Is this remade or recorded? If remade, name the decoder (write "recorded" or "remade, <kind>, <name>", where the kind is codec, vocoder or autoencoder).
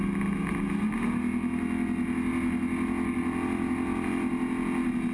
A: recorded